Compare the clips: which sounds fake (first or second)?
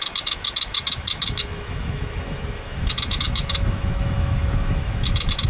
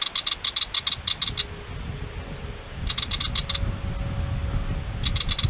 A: first